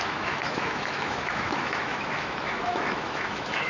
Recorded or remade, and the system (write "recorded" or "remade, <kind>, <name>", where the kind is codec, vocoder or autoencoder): remade, autoencoder, DAC-VAE